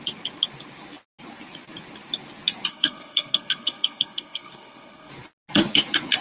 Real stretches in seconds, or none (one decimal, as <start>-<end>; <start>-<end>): 0.0-2.7; 5.1-6.2